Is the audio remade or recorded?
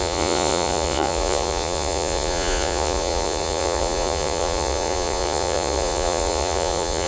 remade